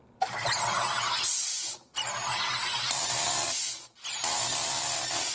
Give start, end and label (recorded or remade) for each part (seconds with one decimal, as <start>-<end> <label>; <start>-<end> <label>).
0.0-5.3 recorded